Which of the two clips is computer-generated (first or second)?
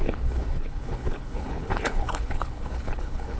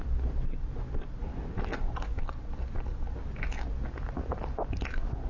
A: first